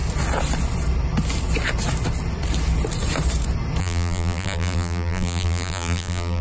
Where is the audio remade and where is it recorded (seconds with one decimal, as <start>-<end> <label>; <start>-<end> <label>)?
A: 0.0-3.8 recorded; 3.8-6.4 remade